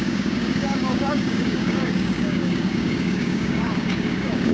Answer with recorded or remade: remade